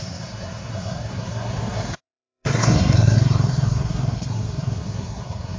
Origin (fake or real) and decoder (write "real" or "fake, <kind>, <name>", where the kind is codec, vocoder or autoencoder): fake, codec, SNAC